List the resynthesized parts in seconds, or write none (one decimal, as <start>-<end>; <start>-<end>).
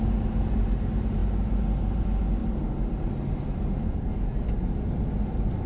none